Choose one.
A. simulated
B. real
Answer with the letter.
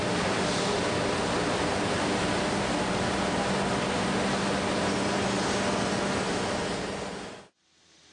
B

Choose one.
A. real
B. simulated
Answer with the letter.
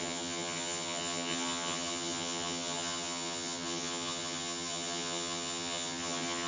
B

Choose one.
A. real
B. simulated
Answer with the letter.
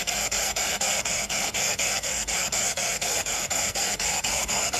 B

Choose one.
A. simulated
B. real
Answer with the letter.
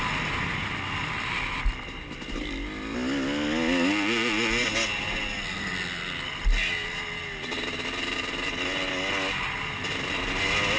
B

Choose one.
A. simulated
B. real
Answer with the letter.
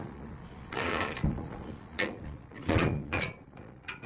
A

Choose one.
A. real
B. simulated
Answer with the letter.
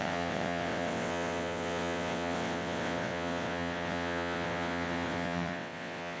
B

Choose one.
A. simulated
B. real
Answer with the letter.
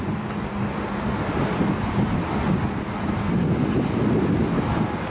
B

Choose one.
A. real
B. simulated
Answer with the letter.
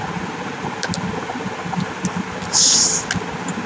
A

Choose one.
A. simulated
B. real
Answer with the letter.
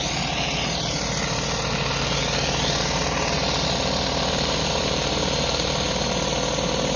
B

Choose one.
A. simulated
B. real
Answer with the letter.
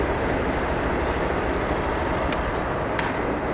B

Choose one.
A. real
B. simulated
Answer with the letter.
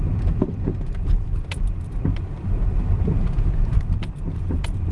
B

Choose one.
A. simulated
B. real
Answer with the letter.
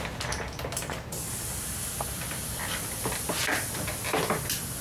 B